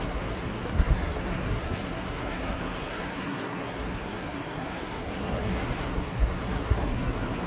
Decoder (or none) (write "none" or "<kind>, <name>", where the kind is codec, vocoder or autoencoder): codec, SNAC